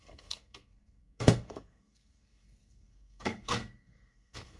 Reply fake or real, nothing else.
fake